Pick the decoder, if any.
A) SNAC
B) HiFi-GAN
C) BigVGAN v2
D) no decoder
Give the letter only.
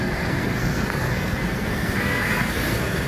A